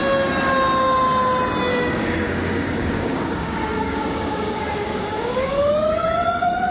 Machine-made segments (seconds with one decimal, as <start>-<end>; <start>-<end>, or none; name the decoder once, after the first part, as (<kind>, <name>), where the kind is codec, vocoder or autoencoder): 1.7-5.7 (codec, DAC)